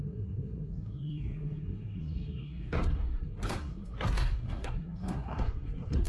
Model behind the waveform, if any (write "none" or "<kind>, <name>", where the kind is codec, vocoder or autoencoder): codec, SNAC